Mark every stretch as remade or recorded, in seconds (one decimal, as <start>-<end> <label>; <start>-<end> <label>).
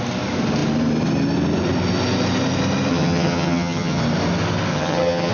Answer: 0.0-2.9 recorded; 2.9-4.0 remade; 4.0-4.7 recorded; 4.7-5.3 remade